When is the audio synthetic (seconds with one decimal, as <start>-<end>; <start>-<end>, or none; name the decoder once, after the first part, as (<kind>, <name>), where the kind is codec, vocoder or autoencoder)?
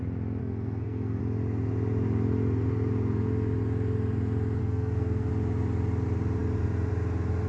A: 0.4-1.2 (codec, SNAC); 4.6-5.3